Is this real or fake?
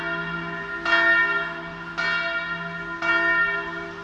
real